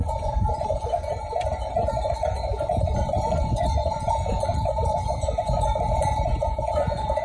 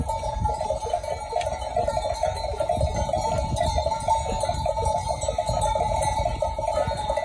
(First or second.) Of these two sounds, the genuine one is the second